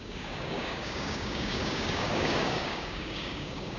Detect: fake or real fake